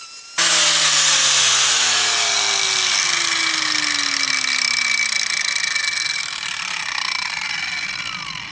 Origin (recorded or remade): recorded